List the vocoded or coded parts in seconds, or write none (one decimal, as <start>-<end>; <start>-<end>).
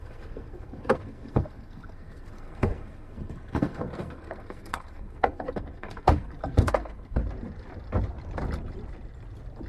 0.0-7.2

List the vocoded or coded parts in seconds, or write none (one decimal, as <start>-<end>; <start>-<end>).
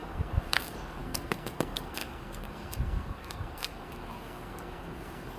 0.0-5.4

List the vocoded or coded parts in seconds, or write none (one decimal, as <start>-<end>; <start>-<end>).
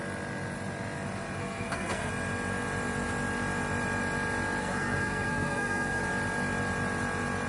1.4-2.1; 4.6-6.0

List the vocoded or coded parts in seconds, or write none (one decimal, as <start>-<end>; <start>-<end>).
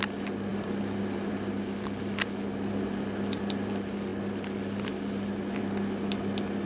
none